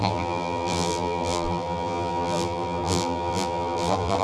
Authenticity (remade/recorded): remade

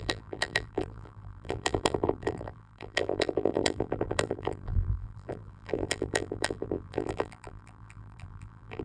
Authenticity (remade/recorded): remade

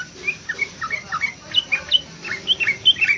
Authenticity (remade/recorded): recorded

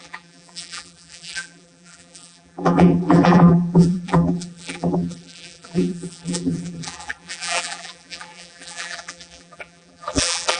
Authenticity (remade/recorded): remade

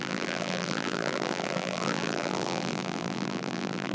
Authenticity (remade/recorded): remade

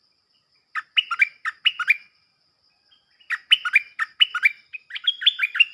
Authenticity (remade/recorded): recorded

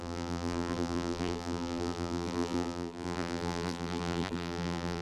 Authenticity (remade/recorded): remade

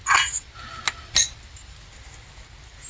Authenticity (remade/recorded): recorded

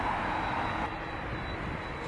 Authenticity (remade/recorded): recorded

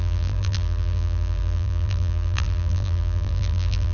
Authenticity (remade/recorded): remade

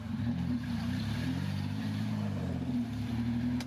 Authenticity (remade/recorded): remade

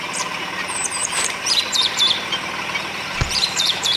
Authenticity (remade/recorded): remade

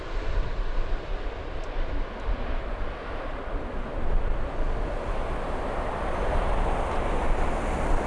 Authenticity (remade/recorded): recorded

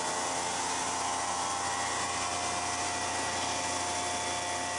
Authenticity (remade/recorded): recorded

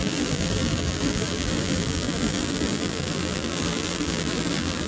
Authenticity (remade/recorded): remade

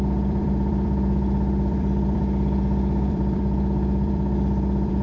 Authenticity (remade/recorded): remade